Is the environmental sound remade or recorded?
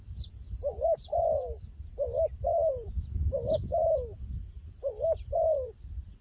remade